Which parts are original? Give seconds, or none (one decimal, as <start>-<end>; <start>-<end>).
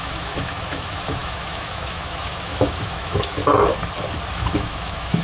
3.4-4.3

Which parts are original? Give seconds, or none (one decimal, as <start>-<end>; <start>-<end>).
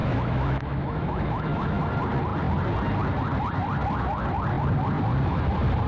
1.9-5.9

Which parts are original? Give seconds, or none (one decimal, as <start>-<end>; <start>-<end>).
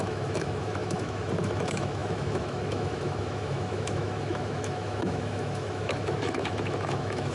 none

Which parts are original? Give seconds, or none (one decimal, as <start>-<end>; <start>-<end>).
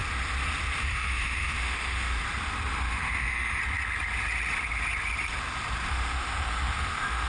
0.0-0.8; 2.2-2.8; 3.6-5.9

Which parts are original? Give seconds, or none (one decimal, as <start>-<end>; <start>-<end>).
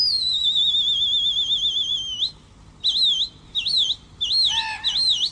0.0-5.3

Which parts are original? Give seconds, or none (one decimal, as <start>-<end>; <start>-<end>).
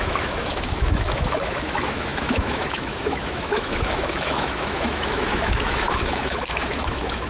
none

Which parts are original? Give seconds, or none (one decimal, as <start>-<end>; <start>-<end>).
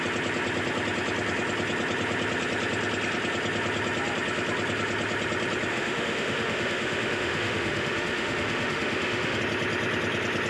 0.0-5.7; 9.4-10.5